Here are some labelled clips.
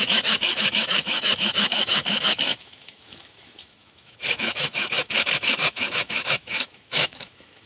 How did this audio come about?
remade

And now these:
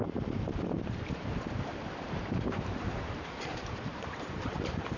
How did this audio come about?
remade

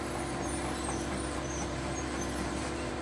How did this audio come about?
remade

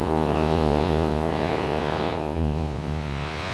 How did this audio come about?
remade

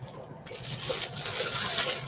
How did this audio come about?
recorded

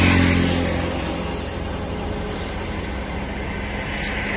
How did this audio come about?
recorded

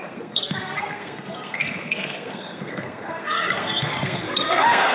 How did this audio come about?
remade